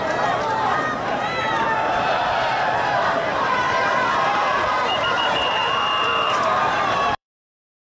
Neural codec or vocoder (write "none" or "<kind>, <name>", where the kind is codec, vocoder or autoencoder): vocoder, BigVGAN v2